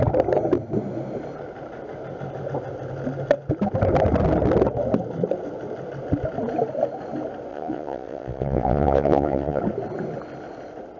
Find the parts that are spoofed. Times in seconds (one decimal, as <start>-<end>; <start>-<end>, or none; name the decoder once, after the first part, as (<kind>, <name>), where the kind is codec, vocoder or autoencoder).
7.5-9.6 (vocoder, WaveNeXt)